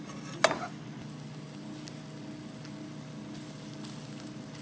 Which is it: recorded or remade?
recorded